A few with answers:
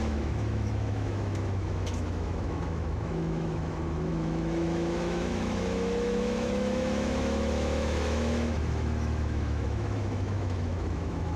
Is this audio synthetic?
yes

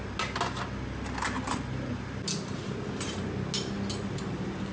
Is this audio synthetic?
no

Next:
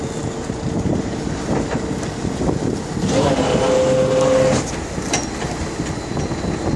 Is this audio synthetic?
no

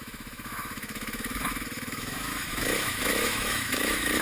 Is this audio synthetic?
yes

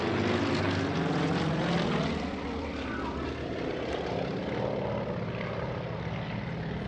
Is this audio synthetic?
no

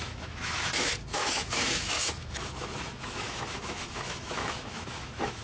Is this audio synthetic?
yes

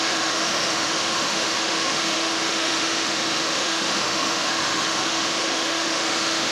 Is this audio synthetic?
yes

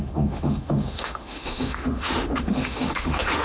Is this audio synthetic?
yes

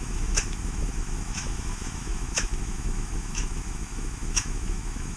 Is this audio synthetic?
yes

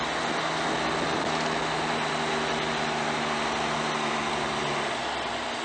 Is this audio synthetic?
no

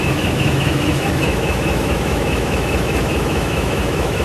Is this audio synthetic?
yes